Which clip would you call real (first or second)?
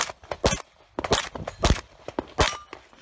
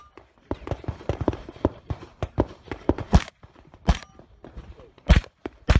first